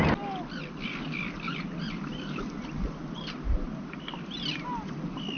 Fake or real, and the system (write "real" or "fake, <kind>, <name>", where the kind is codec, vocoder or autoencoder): real